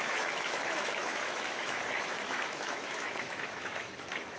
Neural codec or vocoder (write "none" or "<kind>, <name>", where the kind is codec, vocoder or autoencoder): autoencoder, DAC-VAE